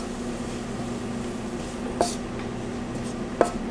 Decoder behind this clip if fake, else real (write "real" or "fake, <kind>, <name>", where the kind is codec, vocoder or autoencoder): real